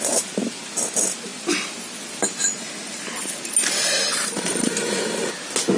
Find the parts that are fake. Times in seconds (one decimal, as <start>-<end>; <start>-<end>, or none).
4.1-4.7